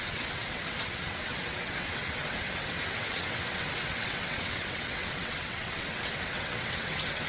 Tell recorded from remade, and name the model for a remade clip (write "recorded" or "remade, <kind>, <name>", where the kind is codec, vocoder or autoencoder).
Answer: remade, vocoder, WaveNeXt